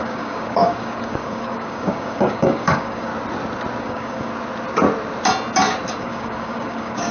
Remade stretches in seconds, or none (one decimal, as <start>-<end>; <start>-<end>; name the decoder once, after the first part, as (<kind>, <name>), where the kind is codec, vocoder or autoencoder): 0.0-3.1 (codec, DAC); 3.8-4.3; 6.0-7.1